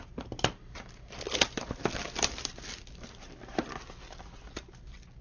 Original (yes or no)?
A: yes